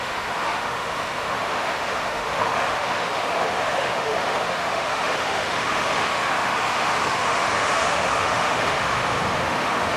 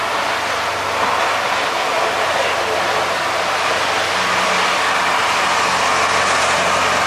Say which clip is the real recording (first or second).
second